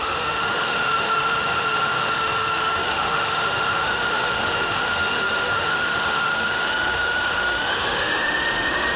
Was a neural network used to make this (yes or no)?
yes